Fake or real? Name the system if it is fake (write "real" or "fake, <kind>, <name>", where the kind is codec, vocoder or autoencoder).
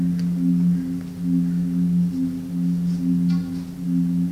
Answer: real